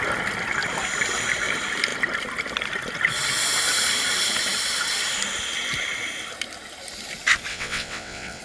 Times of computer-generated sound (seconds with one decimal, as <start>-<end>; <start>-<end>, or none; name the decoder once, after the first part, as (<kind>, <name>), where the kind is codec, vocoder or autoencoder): 7.5-8.4 (vocoder, WaveNeXt)